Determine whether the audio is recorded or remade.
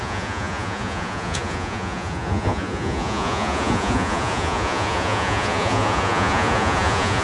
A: remade